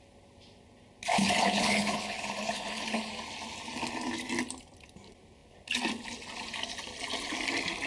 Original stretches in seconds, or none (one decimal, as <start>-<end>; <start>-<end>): 0.0-1.1; 3.1-7.9